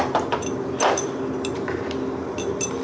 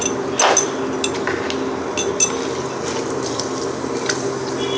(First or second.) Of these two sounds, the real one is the second